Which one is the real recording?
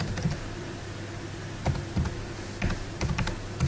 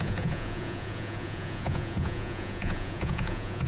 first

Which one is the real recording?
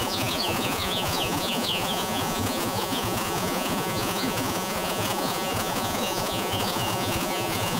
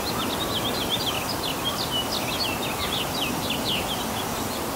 second